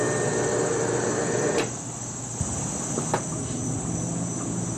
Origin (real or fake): real